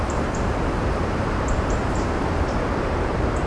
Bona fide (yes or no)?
no